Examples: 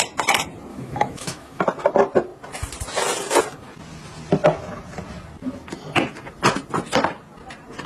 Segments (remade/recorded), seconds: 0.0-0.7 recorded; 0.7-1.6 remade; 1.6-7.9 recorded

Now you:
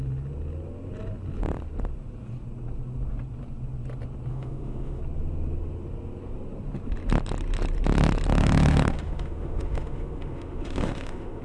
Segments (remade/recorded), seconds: 0.0-4.3 recorded; 4.3-5.0 remade; 5.0-8.3 recorded; 8.3-11.4 remade

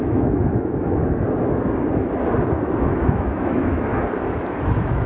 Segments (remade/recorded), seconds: 0.0-1.0 remade; 1.0-2.8 recorded; 2.8-3.9 remade; 3.9-4.4 recorded; 4.4-5.1 remade

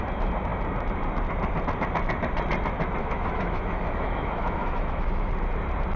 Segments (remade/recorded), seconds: 0.0-3.0 recorded; 3.0-5.3 remade; 5.3-6.0 recorded